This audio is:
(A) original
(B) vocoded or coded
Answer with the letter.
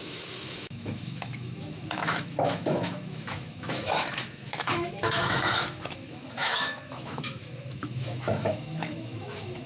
B